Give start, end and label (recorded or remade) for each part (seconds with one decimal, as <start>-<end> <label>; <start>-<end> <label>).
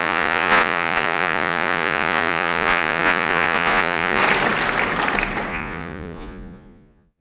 0.0-4.2 remade; 4.2-5.5 recorded; 5.5-7.2 remade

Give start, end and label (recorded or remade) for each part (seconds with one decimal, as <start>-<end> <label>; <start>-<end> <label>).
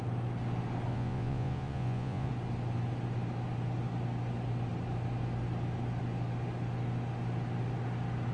0.0-0.9 recorded; 0.9-2.3 remade; 2.3-8.3 recorded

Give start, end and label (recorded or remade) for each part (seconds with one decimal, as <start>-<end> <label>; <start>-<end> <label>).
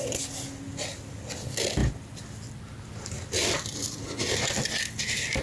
0.0-5.4 recorded